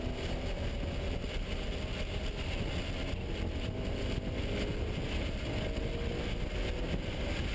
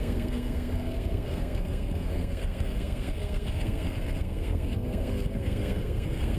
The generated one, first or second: second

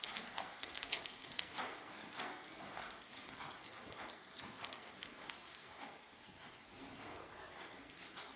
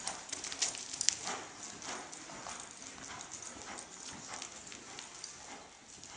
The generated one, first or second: first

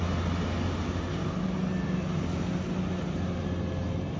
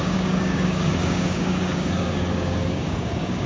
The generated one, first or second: second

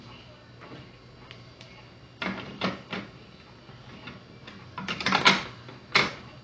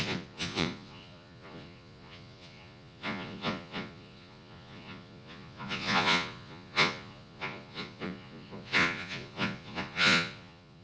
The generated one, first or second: second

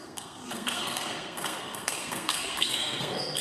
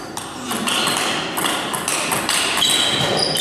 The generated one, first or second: first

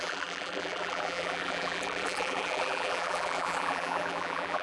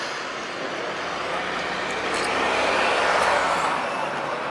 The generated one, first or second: first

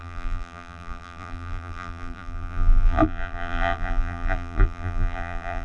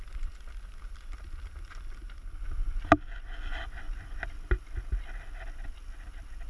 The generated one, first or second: first